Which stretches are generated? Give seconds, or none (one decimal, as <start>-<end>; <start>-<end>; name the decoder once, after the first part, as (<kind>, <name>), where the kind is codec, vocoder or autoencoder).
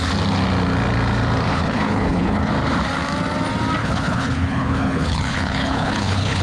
1.5-2.5 (codec, HILCodec); 3.8-6.4